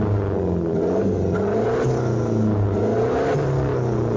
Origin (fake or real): real